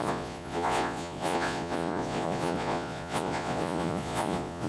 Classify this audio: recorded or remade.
remade